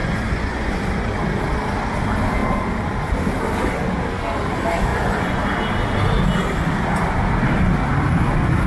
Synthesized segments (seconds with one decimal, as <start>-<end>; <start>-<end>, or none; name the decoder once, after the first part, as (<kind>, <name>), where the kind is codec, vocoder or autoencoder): 0.0-0.7 (vocoder, Vocos); 4.9-5.4

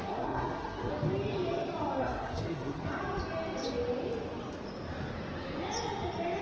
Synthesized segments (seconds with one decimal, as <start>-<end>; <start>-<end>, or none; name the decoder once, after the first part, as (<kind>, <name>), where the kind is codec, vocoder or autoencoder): 0.0-0.9 (codec, SNAC); 2.0-3.0

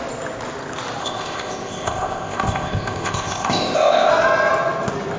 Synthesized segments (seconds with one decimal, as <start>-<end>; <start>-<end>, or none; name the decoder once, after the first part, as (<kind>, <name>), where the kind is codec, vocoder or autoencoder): 1.0-4.1 (codec, ZipCodec)